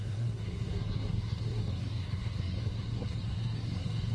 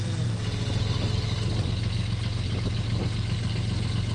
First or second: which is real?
second